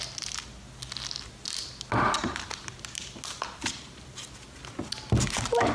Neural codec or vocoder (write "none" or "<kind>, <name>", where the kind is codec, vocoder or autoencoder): none